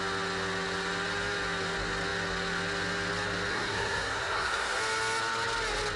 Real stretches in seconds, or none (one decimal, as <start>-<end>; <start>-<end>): 0.0-3.5; 4.8-6.0